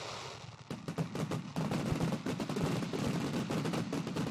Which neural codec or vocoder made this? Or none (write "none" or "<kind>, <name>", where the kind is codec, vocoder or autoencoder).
none